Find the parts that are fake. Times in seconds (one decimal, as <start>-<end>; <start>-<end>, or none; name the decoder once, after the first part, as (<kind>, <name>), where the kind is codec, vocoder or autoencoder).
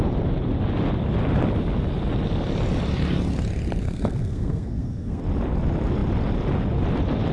3.8-5.2 (codec, SNAC)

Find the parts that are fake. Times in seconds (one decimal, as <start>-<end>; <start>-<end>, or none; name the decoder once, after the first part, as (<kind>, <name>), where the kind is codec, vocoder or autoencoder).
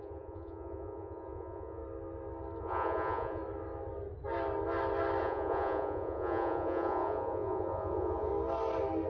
0.0-1.8 (vocoder, Vocos); 2.6-3.4; 5.2-8.3